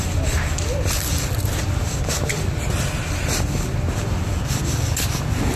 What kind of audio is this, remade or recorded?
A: recorded